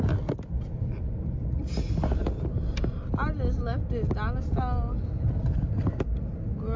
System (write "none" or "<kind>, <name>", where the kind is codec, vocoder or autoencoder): none